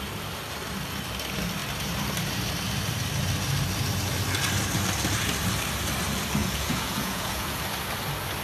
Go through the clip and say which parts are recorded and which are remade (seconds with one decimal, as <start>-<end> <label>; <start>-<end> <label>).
0.0-6.4 recorded; 6.4-7.6 remade; 7.6-8.4 recorded